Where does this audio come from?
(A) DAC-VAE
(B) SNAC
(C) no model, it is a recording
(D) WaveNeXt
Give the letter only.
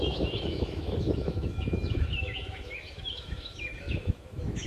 A